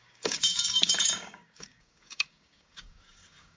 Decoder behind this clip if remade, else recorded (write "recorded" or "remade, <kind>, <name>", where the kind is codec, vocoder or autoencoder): remade, codec, DAC